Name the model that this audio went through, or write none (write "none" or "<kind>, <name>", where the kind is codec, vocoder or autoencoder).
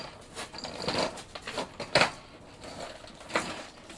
none